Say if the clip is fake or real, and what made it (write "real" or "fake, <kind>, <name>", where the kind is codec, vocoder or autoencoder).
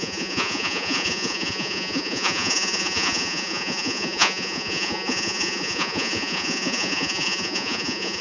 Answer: fake, vocoder, Vocos